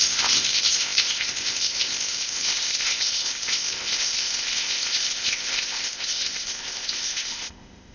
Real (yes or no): no